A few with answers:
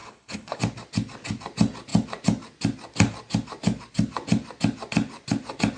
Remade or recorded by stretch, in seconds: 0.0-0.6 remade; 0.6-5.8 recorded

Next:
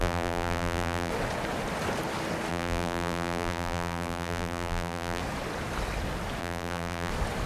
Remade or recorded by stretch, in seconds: 0.0-1.1 remade; 1.1-2.5 recorded; 2.5-5.2 remade; 5.2-6.4 recorded; 6.4-7.1 remade; 7.1-7.5 recorded

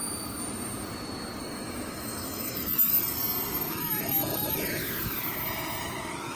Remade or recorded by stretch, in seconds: 0.0-1.4 recorded; 1.4-2.9 remade; 2.9-3.7 recorded; 3.7-4.8 remade; 4.8-5.8 recorded; 5.8-6.4 remade

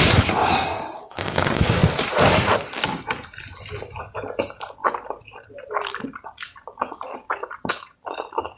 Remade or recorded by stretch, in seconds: 0.0-0.4 recorded; 0.4-1.8 remade; 1.8-8.6 recorded

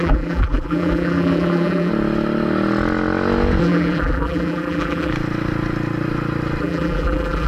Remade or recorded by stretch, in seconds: 0.0-1.9 remade; 1.9-3.6 recorded; 3.6-5.1 remade; 5.1-6.6 recorded; 6.6-7.5 remade